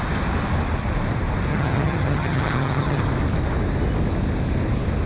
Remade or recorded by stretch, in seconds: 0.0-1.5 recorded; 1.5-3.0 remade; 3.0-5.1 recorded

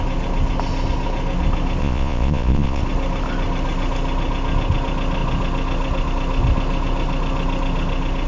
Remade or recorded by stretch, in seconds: 0.0-1.8 recorded; 1.8-2.8 remade; 2.8-8.3 recorded

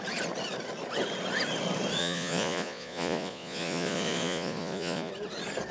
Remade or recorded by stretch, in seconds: 0.0-2.0 recorded; 2.0-5.1 remade; 5.1-5.7 recorded

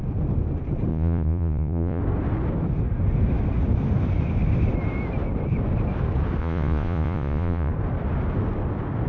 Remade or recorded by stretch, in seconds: 0.0-0.9 recorded; 0.9-2.0 remade; 2.0-6.4 recorded; 6.4-7.7 remade; 7.7-9.1 recorded

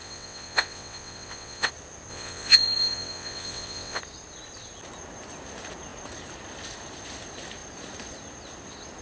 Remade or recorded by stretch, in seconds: 0.0-1.7 remade; 1.7-2.1 recorded; 2.1-4.0 remade; 4.0-9.0 recorded

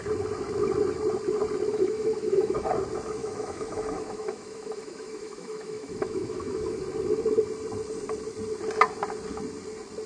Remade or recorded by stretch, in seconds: 0.0-1.7 recorded; 1.7-2.7 remade; 2.7-3.2 recorded; 3.2-6.8 remade; 6.8-10.1 recorded

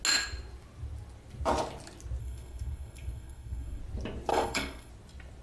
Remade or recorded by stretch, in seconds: 0.0-2.2 recorded; 2.2-3.8 remade; 3.8-4.3 recorded; 4.3-4.9 remade; 4.9-5.4 recorded